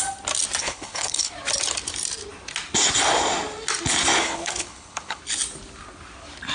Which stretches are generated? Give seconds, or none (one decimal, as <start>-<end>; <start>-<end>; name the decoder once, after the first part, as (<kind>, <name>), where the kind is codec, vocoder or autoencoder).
0.6-1.3 (codec, HILCodec); 4.2-5.2

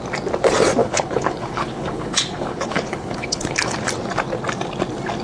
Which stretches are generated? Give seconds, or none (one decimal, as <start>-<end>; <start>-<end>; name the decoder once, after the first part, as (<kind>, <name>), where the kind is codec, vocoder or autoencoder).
0.8-3.9 (codec, HILCodec)

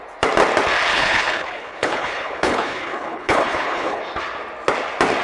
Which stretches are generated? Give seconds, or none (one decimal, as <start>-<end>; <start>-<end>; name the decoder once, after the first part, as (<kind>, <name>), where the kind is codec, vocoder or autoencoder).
0.9-4.0 (codec, HILCodec)

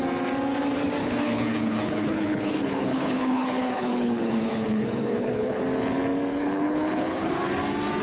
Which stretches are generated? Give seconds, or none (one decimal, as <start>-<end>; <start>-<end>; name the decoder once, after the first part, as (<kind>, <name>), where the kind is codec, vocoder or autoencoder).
1.0-5.6 (codec, HILCodec); 6.3-7.3

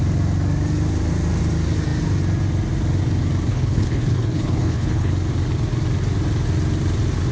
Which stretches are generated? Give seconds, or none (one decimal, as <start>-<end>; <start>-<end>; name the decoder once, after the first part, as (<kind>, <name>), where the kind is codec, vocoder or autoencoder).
3.5-5.1 (codec, HILCodec)

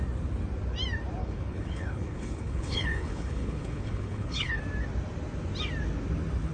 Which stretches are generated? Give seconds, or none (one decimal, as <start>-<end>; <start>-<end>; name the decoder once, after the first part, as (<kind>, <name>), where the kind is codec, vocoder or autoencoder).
1.2-4.6 (codec, HILCodec)

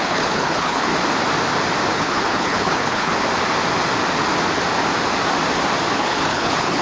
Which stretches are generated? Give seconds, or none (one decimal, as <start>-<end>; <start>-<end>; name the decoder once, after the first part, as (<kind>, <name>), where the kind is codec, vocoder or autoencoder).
0.0-0.9 (codec, HILCodec); 1.9-3.1; 5.9-6.8